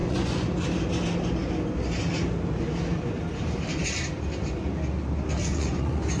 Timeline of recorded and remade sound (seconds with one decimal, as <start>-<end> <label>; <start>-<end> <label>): 0.0-0.5 remade; 0.5-5.4 recorded; 5.4-6.2 remade